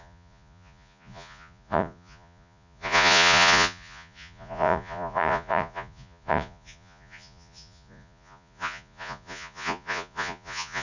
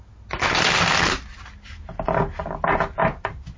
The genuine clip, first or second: second